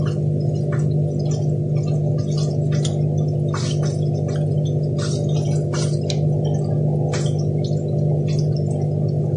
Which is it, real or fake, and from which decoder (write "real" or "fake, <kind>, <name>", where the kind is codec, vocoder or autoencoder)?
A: real